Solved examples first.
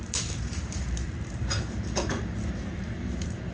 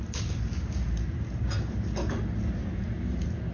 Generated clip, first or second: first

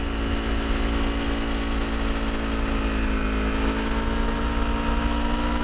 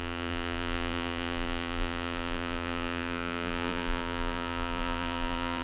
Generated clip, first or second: second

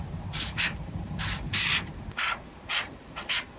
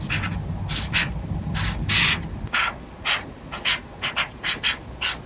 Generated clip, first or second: first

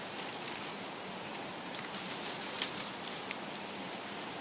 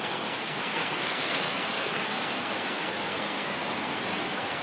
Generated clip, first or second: second